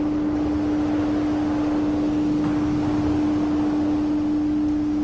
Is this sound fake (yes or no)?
no